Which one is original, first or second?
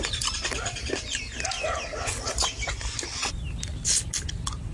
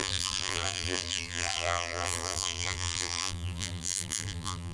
first